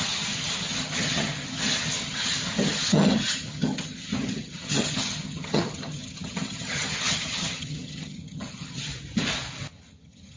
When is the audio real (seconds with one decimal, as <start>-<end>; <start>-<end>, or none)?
8.9-9.7